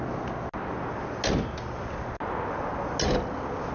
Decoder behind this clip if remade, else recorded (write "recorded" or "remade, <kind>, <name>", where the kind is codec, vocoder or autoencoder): recorded